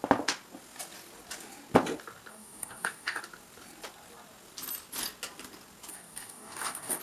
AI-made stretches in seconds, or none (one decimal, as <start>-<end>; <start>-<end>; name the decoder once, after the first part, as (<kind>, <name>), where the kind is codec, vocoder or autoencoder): 2.3-3.2 (codec, DAC); 5.9-7.0